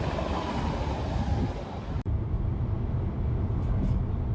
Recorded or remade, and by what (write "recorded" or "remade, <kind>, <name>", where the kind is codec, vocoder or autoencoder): recorded